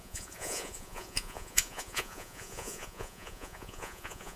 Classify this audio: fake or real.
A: fake